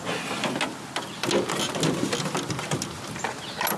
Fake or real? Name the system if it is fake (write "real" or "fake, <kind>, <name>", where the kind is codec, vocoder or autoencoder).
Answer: real